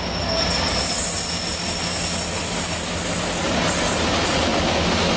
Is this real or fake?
real